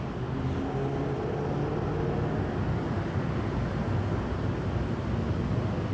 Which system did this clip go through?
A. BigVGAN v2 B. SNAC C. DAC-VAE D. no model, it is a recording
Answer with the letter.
D